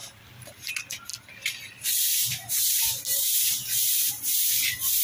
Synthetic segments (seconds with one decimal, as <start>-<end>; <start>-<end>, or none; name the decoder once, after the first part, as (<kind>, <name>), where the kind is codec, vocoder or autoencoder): 0.0-0.7 (vocoder, BigVGAN v2)